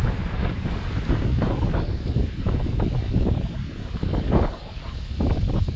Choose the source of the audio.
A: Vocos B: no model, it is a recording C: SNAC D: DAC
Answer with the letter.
D